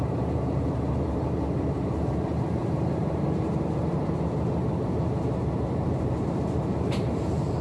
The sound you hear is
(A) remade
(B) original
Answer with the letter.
A